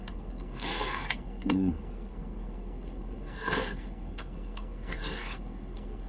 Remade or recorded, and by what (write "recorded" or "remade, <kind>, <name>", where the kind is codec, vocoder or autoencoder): remade, codec, SNAC